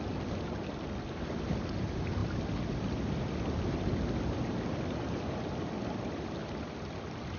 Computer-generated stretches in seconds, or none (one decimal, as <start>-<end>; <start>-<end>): none